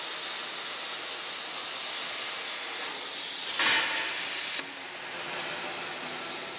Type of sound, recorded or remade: recorded